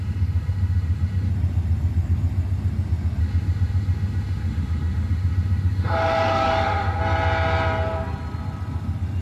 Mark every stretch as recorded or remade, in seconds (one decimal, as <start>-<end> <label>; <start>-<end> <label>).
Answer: 0.0-1.3 remade; 1.3-3.2 recorded; 3.2-7.0 remade; 7.0-9.2 recorded